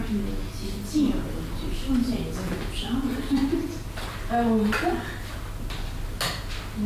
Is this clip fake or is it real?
real